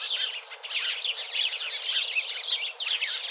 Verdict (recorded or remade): recorded